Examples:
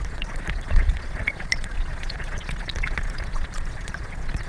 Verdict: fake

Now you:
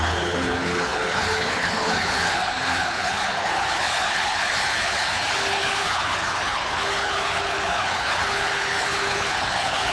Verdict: fake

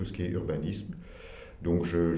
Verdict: real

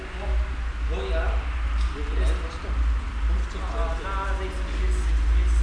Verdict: real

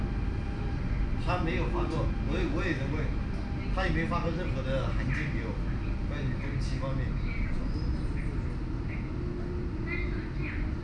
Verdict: real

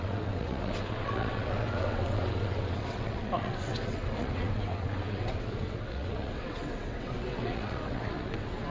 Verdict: fake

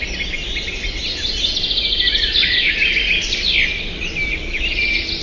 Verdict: real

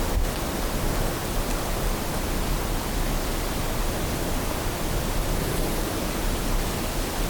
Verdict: real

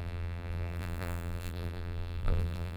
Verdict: fake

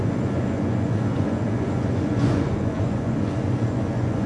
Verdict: fake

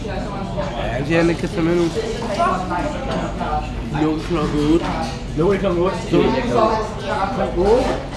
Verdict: real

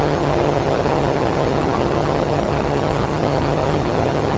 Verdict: fake